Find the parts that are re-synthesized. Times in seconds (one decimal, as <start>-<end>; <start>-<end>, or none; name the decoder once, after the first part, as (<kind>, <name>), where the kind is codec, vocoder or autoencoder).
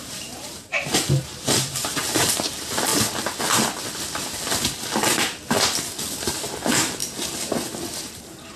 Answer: 0.0-2.9 (vocoder, BigVGAN v2); 6.2-7.0; 8.0-8.6